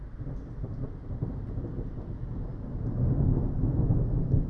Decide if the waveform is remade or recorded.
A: recorded